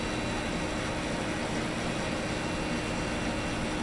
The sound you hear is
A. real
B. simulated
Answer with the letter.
A